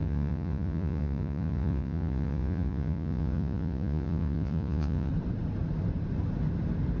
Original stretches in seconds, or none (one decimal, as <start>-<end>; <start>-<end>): 5.1-7.0